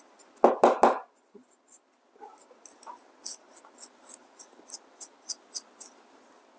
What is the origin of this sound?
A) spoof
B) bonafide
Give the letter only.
B